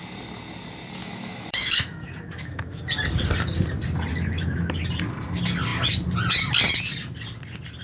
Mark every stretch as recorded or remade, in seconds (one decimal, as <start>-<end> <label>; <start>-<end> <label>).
0.0-1.0 recorded; 1.0-2.8 remade; 2.8-4.1 recorded; 4.1-4.7 remade; 4.7-7.8 recorded